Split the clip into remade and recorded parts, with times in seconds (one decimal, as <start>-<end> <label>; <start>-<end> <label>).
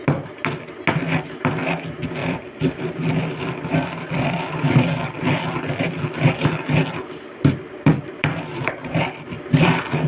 0.0-2.2 recorded; 2.2-5.4 remade; 5.4-6.8 recorded; 6.8-9.6 remade; 9.6-10.1 recorded